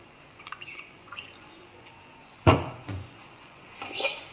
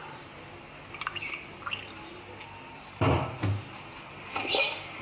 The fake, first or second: first